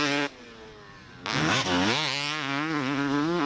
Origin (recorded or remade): recorded